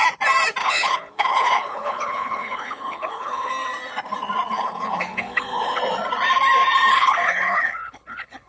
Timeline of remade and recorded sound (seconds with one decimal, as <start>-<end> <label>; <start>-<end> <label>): 0.0-0.6 recorded; 0.6-3.5 remade; 3.5-4.5 recorded; 4.5-5.8 remade; 5.8-6.9 recorded; 6.9-8.5 remade